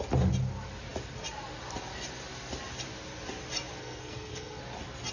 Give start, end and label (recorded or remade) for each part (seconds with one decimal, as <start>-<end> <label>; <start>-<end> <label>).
0.0-3.8 recorded; 3.8-4.6 remade; 4.6-5.1 recorded